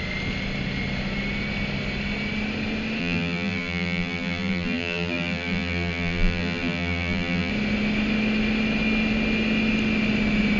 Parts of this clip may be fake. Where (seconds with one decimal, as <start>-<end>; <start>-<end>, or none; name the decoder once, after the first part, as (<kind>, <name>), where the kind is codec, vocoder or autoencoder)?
3.0-7.5 (vocoder, BigVGAN v2)